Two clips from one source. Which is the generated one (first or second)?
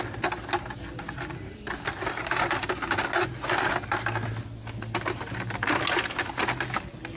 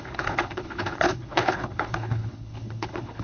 second